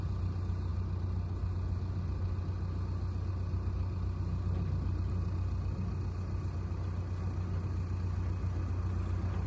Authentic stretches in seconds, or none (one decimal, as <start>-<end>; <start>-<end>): 0.0-9.5

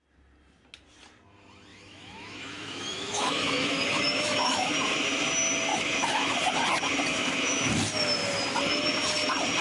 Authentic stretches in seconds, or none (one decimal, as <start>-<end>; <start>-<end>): 0.0-1.7; 4.7-5.7; 6.4-7.1; 7.7-9.6

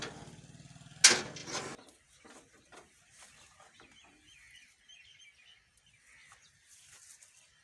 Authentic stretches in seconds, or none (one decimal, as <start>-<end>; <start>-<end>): 0.0-7.6

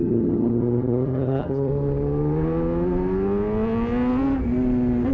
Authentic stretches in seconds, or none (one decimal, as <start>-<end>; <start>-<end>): 1.7-5.1

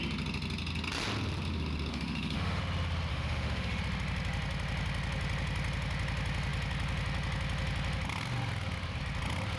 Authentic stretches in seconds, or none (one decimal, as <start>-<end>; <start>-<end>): 0.0-1.9; 2.6-3.1; 3.8-9.6

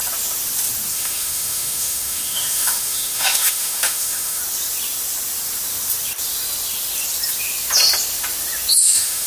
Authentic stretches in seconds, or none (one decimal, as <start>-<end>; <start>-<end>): 0.0-0.9; 4.4-8.7

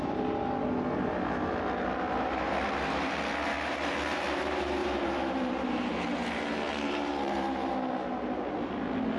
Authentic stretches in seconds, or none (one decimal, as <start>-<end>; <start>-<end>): 0.0-4.8; 7.7-9.2